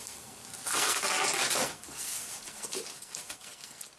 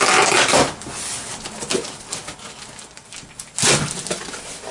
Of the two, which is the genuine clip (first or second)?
second